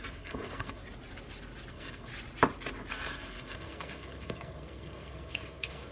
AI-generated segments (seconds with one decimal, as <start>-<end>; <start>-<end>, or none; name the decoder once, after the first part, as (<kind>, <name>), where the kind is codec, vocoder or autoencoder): 0.0-0.8 (codec, SNAC); 1.7-2.1; 2.9-5.9